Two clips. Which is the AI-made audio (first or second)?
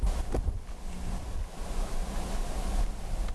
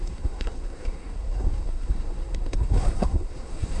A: second